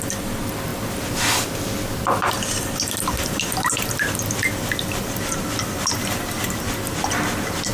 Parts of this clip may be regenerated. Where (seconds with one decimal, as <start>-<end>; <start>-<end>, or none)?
none